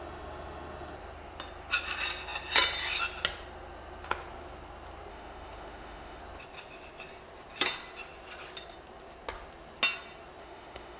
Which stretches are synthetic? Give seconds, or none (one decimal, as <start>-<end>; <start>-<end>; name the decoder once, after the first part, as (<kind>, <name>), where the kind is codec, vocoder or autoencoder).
5.1-6.2 (autoencoder, DAC-VAE); 10.4-11.0